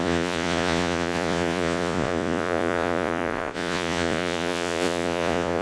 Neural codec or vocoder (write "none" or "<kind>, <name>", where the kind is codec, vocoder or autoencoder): vocoder, Vocos